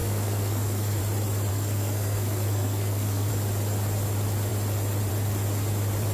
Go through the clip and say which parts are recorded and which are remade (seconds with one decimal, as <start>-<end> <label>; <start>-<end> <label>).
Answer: 0.0-1.0 remade; 1.0-1.5 recorded; 1.5-3.3 remade; 3.3-6.1 recorded